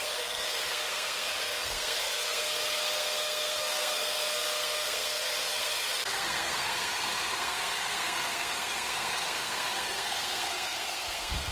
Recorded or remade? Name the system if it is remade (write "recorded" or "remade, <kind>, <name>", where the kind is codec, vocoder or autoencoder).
remade, codec, SNAC